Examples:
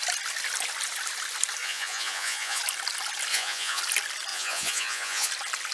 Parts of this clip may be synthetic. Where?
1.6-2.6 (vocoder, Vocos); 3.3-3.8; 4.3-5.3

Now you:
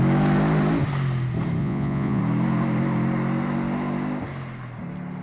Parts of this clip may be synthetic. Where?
1.6-2.2 (vocoder, Vocos)

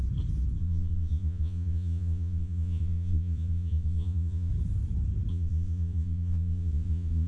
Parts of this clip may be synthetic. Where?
0.6-4.5 (vocoder, Vocos); 5.3-7.3

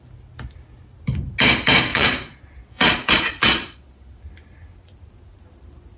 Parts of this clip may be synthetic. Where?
1.9-4.2 (vocoder, Vocos)

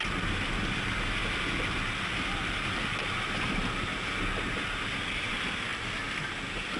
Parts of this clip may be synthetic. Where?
none

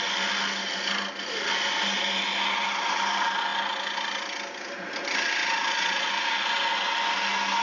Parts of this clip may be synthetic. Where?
5.4-6.1 (vocoder, Vocos)

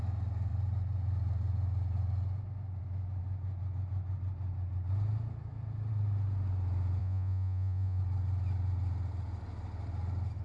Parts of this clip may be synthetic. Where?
7.0-8.0 (vocoder, Vocos)

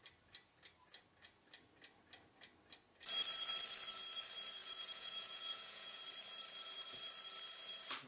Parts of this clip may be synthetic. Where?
4.6-6.0 (vocoder, Vocos)